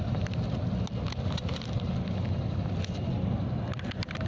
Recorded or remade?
recorded